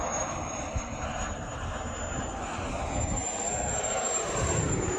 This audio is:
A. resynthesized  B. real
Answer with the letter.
A